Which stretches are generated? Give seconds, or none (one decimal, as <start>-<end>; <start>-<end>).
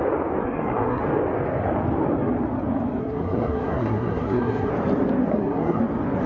0.4-1.0; 3.0-4.7; 5.3-5.8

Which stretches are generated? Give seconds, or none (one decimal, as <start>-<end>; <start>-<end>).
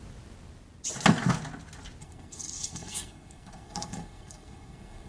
2.0-5.1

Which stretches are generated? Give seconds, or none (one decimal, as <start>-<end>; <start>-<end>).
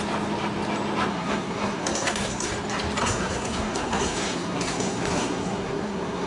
1.1-2.5; 3.0-6.3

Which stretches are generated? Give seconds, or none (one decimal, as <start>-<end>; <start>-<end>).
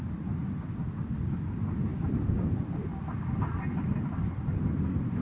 none